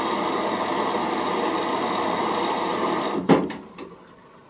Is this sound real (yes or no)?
yes